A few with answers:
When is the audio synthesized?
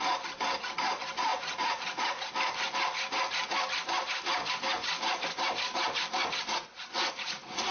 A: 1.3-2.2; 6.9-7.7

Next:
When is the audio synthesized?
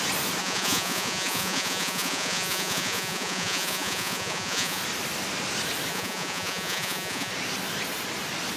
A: 0.4-4.8; 5.9-7.3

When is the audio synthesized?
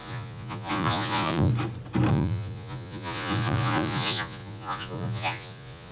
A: 0.0-1.5; 2.1-5.9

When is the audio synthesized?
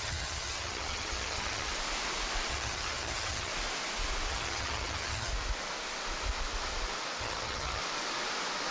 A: 0.0-1.7; 2.5-3.5; 4.3-5.3; 7.2-7.8